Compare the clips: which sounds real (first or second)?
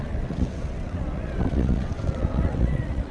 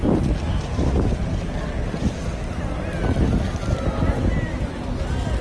second